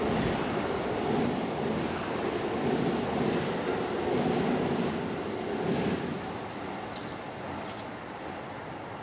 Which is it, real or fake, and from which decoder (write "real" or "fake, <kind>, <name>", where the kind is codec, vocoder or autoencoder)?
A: real